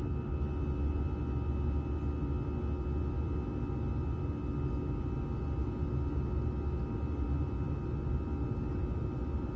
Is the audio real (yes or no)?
yes